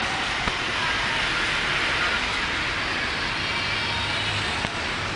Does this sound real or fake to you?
real